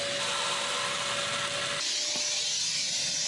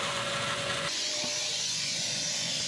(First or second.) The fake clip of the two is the second